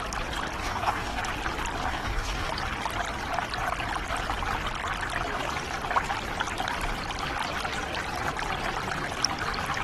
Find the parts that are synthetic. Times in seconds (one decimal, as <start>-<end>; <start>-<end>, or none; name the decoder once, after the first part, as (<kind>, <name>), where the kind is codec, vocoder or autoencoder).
0.6-1.2 (codec, DAC); 1.9-2.5